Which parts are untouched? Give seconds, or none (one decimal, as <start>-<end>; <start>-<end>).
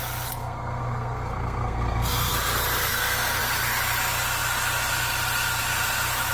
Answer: 0.0-0.4; 2.3-2.9; 3.4-6.3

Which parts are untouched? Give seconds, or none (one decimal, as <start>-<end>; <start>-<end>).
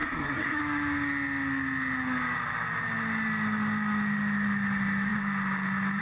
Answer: 0.6-6.0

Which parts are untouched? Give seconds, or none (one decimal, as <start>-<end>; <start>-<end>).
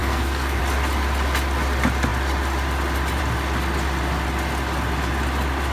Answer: 0.6-5.7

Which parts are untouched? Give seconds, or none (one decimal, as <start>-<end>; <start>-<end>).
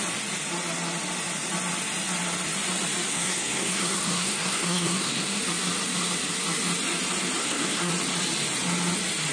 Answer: 0.0-3.1; 5.4-7.4; 7.9-9.3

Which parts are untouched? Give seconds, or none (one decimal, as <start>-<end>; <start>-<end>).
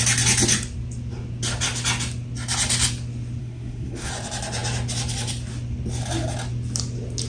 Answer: 0.0-3.4; 4.1-7.3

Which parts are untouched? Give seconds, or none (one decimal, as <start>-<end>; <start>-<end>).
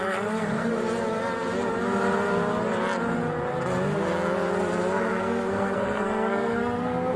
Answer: 0.7-5.0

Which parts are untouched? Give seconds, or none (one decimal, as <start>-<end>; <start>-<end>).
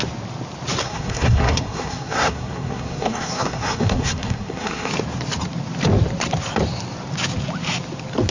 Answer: 0.0-0.8; 4.9-8.3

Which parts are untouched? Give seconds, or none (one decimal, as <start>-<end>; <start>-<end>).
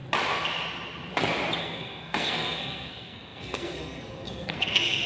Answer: 0.0-1.6